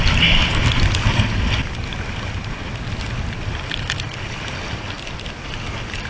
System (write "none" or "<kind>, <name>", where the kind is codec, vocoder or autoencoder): none